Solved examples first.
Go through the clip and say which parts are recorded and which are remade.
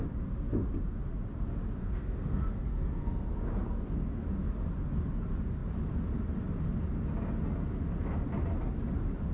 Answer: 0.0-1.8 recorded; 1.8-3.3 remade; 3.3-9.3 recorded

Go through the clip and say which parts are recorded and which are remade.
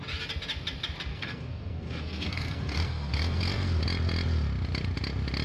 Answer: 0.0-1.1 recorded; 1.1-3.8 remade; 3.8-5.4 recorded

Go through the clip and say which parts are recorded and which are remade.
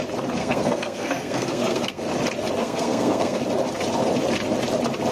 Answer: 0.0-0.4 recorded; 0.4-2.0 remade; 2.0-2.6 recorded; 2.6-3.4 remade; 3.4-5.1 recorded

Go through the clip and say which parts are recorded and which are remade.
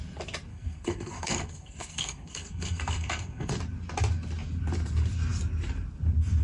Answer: 0.0-0.5 recorded; 0.5-3.5 remade; 3.5-6.4 recorded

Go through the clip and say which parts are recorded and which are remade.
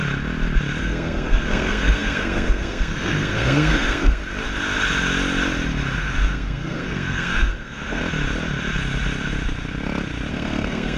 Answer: 0.0-0.8 recorded; 0.8-4.2 remade; 4.2-6.0 recorded; 6.0-8.0 remade; 8.0-10.3 recorded; 10.3-11.0 remade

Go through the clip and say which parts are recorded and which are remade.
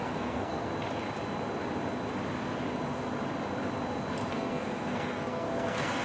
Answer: 0.0-0.7 remade; 0.7-4.3 recorded; 4.3-6.0 remade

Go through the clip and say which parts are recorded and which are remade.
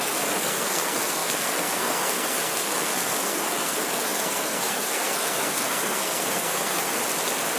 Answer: 0.0-7.0 remade; 7.0-7.6 recorded